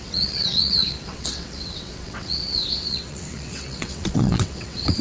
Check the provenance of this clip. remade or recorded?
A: remade